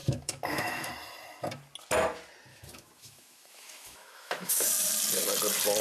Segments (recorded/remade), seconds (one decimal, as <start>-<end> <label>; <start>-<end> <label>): 0.0-0.9 remade; 0.9-2.5 recorded; 2.5-4.7 remade; 4.7-5.8 recorded